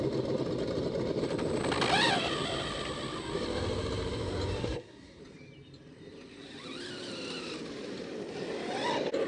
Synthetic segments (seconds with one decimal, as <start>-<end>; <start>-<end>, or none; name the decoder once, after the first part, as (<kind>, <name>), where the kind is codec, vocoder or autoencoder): 4.6-5.2 (codec, SNAC)

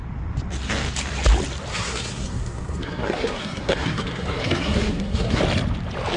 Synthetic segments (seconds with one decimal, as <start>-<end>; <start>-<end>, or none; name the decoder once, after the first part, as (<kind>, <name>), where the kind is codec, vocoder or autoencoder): 1.7-5.4 (codec, SNAC)